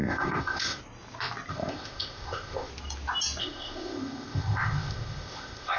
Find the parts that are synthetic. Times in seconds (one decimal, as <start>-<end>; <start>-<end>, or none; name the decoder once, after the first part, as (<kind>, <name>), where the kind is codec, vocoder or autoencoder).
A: 0.0-0.8 (codec, ZipCodec); 1.5-2.7; 3.4-5.8